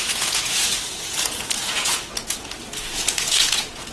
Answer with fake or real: fake